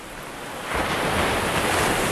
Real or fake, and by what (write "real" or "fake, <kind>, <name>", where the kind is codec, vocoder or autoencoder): real